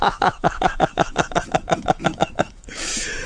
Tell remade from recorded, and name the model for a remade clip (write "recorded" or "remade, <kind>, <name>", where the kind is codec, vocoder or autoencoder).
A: remade, autoencoder, DAC-VAE